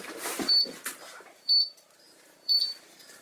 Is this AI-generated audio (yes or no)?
yes